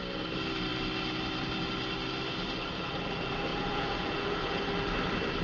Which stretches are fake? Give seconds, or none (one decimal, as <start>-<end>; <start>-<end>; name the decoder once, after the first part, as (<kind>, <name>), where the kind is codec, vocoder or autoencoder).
3.5-4.6 (vocoder, Vocos)